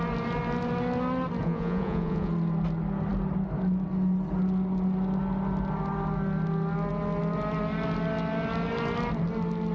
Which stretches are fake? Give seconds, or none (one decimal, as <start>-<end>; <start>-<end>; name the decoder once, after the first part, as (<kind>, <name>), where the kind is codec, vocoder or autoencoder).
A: 1.4-2.3 (vocoder, Vocos)